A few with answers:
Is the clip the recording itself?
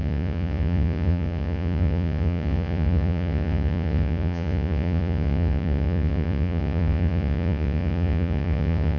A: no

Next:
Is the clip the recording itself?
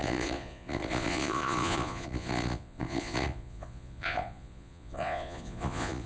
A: no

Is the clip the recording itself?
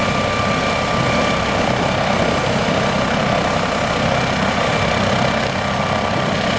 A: yes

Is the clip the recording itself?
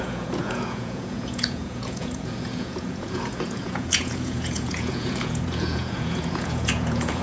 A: no